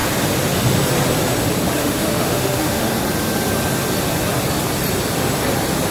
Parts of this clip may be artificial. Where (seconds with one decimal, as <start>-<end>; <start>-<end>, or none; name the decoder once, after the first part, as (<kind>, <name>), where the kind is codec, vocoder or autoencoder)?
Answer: 1.8-2.9 (autoencoder, DAC-VAE)